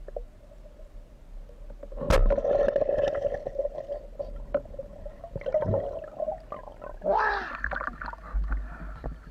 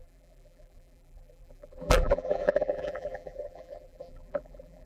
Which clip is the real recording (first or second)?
first